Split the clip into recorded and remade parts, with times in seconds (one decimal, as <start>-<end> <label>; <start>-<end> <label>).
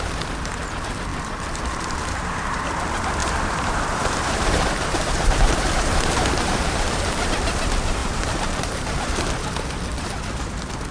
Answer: 0.0-1.1 recorded; 1.1-2.6 remade; 2.6-3.2 recorded; 3.2-7.3 remade; 7.3-8.0 recorded; 8.0-9.2 remade; 9.2-10.9 recorded